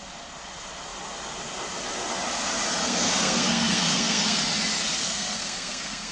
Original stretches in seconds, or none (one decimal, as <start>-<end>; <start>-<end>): 0.0-2.8; 4.4-5.0